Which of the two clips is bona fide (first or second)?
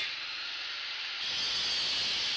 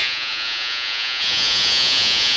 first